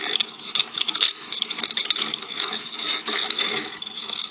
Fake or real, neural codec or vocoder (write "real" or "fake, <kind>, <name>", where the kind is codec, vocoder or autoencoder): fake, autoencoder, DAC-VAE